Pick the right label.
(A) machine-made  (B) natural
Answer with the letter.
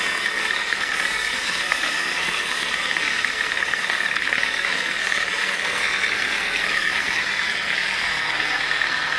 A